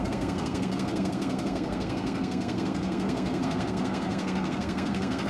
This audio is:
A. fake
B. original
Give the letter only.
A